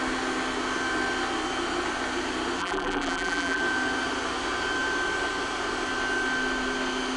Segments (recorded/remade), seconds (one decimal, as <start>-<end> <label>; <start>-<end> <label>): 0.0-2.6 recorded; 2.6-3.6 remade; 3.6-7.2 recorded